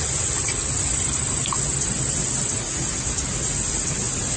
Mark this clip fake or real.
real